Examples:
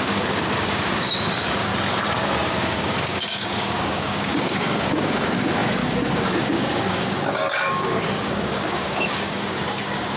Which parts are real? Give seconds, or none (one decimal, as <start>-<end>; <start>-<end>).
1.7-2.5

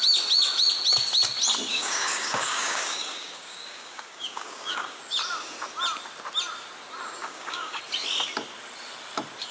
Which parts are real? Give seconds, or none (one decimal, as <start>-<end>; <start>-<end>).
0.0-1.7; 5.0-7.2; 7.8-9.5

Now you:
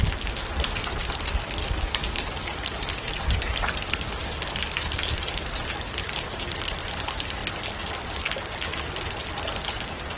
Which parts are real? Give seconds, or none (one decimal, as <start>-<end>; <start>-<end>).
0.0-1.0; 6.1-10.2

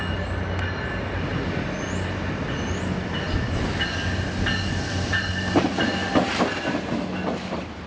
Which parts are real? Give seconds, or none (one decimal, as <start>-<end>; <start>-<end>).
0.0-7.9

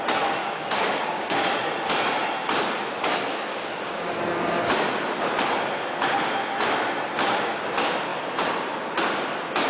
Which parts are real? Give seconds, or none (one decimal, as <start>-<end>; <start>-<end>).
0.0-0.4; 1.4-3.3; 4.2-7.2; 7.7-9.7

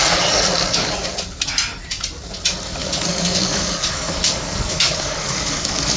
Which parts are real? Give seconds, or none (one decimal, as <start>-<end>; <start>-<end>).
0.0-2.8

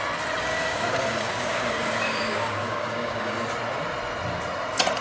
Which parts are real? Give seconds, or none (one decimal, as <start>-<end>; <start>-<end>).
0.0-0.5; 3.5-5.0